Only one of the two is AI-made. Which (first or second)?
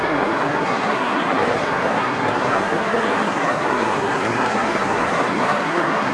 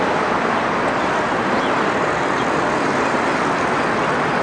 first